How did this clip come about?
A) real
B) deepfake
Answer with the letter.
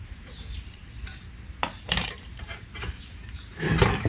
B